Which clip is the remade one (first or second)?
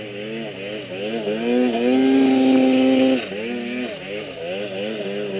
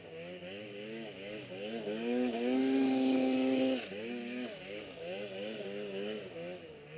second